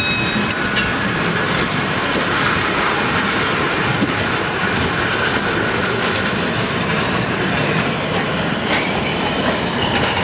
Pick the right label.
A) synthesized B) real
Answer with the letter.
B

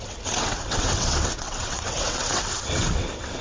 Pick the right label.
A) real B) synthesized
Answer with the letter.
B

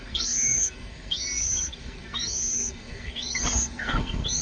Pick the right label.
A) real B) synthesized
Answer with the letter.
B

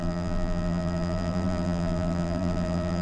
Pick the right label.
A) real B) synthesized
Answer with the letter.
B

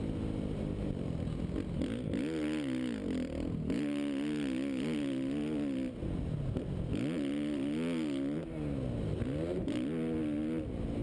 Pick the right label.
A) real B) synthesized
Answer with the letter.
A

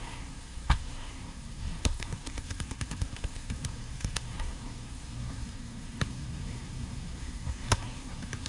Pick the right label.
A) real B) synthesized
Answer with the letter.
B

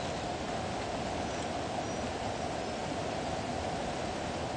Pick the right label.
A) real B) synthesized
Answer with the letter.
A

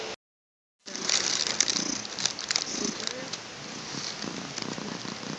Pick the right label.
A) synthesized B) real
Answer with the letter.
B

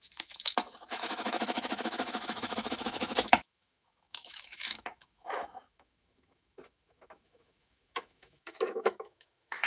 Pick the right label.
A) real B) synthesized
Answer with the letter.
B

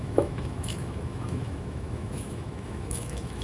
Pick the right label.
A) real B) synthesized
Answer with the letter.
B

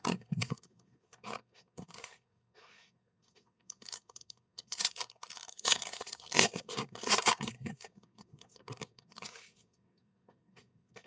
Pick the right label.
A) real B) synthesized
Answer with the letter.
B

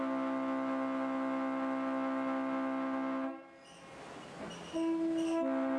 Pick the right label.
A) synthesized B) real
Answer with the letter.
B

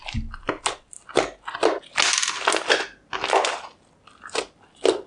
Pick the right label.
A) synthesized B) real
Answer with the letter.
B